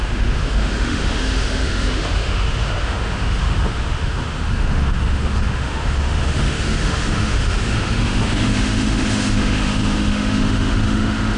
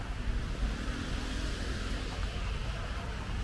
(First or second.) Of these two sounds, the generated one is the first